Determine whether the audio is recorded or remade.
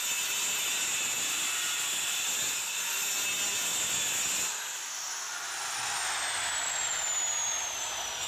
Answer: recorded